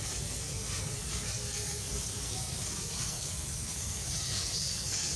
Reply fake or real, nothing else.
fake